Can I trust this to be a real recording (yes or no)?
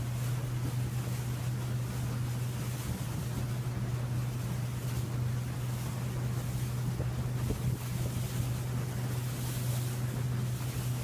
yes